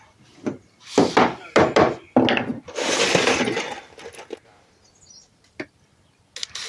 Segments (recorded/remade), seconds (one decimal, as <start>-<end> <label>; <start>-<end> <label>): 0.0-2.5 recorded; 2.5-3.6 remade; 3.6-6.7 recorded